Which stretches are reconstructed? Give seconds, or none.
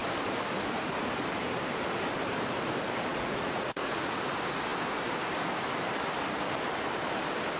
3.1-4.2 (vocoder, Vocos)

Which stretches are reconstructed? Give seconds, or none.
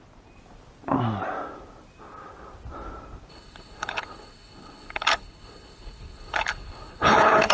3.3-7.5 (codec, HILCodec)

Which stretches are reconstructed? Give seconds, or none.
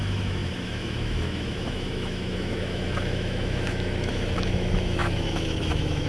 0.0-6.1 (autoencoder, DAC-VAE)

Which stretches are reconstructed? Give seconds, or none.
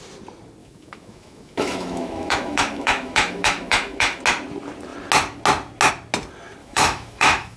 0.6-4.2 (autoencoder, DAC-VAE); 6.6-7.6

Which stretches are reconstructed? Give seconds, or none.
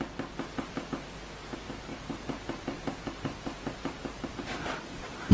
1.9-4.8 (vocoder, BigVGAN v2)